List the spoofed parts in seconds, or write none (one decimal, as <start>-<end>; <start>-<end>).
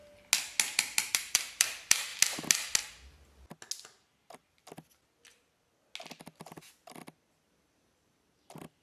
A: 1.1-2.1; 7.3-8.8